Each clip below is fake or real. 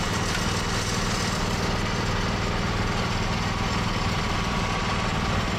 real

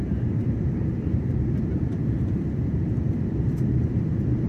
fake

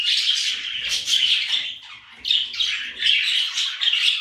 fake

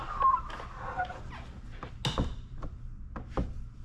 real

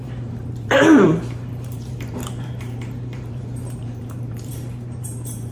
fake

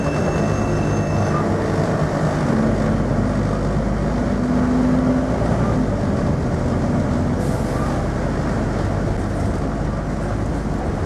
real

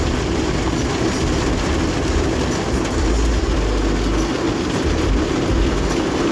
real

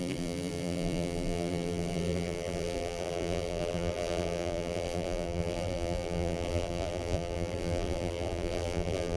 fake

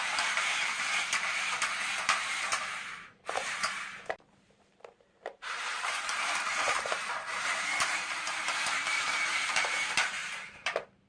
fake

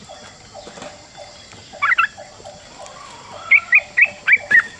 real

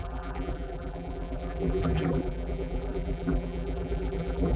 fake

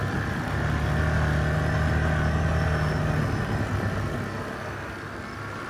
real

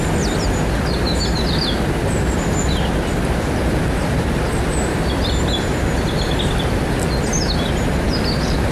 real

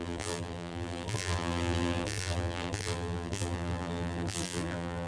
fake